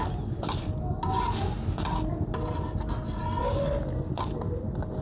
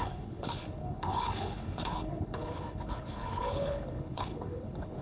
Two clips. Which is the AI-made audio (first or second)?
second